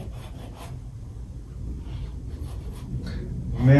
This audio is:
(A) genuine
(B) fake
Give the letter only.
A